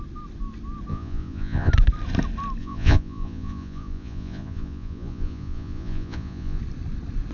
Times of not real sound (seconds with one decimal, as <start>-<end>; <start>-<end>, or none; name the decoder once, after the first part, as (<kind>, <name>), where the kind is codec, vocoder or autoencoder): 0.9-1.7 (vocoder, Vocos); 2.6-6.6